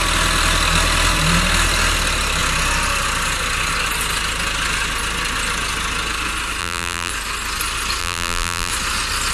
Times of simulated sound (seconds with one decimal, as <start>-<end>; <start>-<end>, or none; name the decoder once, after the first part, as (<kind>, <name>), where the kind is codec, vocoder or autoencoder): 6.6-7.1 (vocoder, BigVGAN v2); 8.0-8.7